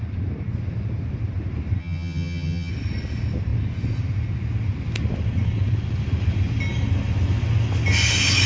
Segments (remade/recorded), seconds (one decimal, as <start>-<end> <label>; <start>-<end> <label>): 0.0-1.8 recorded; 1.8-2.7 remade; 2.7-8.5 recorded